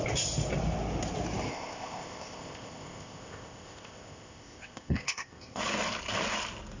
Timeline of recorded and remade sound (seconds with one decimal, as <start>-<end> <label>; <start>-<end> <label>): 0.0-1.5 recorded; 1.5-5.6 remade; 5.6-6.8 recorded